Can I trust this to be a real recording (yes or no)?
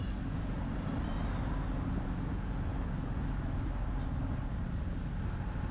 yes